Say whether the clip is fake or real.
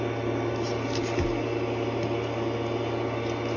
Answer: real